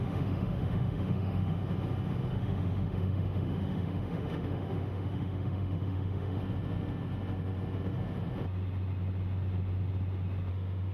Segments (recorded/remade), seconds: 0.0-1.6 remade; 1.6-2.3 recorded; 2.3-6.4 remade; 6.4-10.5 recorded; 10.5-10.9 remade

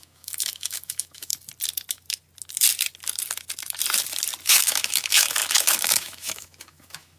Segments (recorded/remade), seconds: 0.0-1.3 remade; 1.3-4.4 recorded; 4.4-7.2 remade

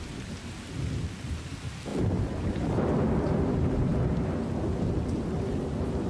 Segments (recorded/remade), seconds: 0.0-6.1 recorded

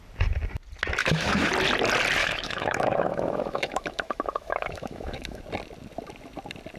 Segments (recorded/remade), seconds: 0.0-1.0 recorded; 1.0-1.5 remade; 1.5-2.2 recorded; 2.2-5.4 remade; 5.4-6.8 recorded

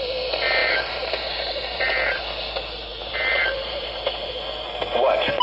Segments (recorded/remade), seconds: 0.0-0.6 recorded; 0.6-2.2 remade; 2.2-2.9 recorded; 2.9-4.3 remade; 4.3-5.4 recorded

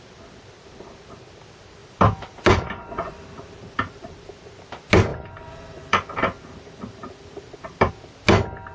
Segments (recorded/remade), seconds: 0.0-1.8 recorded; 1.8-4.6 remade; 4.6-5.1 recorded; 5.1-7.9 remade; 7.9-8.7 recorded

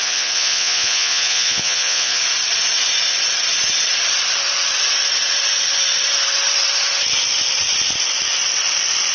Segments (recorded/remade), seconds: 0.0-2.2 remade; 2.2-9.1 recorded